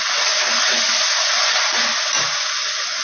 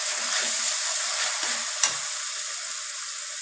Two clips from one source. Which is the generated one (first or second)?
second